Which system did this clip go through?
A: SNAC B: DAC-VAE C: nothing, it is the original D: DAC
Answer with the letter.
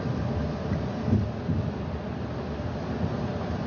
C